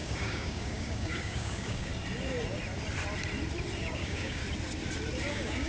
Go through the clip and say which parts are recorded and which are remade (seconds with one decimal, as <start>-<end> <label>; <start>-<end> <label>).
0.0-1.9 remade; 1.9-3.8 recorded; 3.8-4.4 remade; 4.4-5.3 recorded; 5.3-5.7 remade